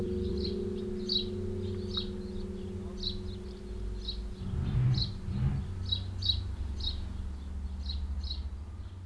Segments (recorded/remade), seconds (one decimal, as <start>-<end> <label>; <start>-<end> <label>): 0.0-0.6 remade; 0.6-9.1 recorded

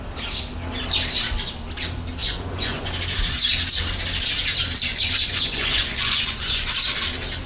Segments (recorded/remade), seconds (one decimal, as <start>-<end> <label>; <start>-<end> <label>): 0.0-2.2 recorded; 2.2-2.9 remade; 2.9-4.9 recorded; 4.9-6.7 remade; 6.7-7.5 recorded

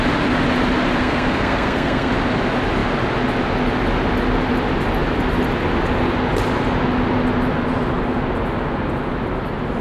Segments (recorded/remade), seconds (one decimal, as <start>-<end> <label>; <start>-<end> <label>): 0.0-1.0 recorded; 1.0-2.1 remade; 2.1-9.8 recorded

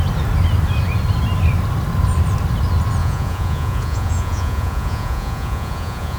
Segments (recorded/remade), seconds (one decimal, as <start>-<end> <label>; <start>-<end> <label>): 0.0-3.0 recorded; 3.0-6.2 remade